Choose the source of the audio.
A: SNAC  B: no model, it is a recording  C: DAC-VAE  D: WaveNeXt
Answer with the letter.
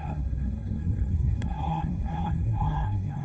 A